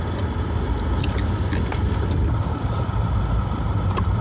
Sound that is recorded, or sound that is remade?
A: recorded